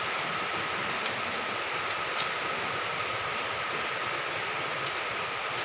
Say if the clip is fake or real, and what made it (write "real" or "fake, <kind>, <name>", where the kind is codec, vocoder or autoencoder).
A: real